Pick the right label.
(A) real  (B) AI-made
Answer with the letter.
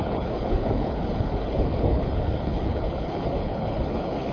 B